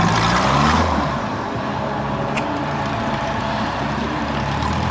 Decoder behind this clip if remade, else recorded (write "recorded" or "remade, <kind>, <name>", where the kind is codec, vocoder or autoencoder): remade, vocoder, BigVGAN v2